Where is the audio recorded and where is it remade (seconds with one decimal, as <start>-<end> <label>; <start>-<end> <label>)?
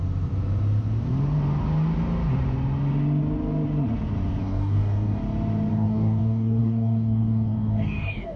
0.0-4.4 recorded; 4.4-5.2 remade; 5.2-5.7 recorded; 5.7-8.4 remade